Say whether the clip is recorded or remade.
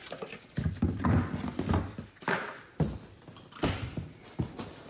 recorded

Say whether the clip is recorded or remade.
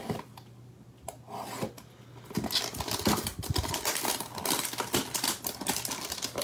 recorded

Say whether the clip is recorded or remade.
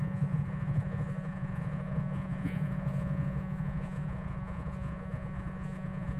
remade